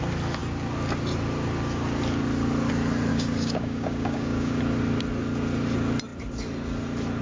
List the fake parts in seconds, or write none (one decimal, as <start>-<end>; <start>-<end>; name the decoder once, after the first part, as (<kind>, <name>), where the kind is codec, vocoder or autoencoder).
3.1-4.6 (codec, DAC)